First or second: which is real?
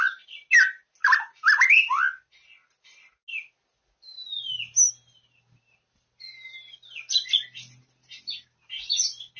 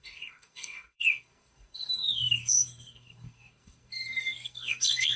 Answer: first